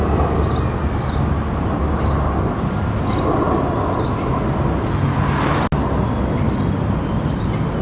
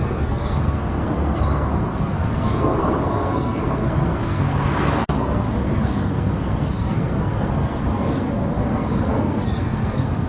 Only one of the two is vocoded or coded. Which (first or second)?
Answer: second